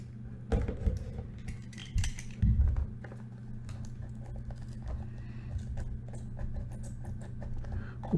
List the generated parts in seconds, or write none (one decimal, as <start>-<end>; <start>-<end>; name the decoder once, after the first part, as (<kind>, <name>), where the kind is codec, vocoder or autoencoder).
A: 1.8-2.4 (vocoder, BigVGAN v2)